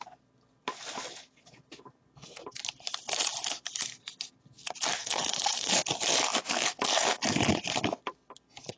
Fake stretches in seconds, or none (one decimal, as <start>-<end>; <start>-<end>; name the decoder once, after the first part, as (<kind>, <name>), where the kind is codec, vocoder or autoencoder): 5.0-5.7 (codec, SNAC)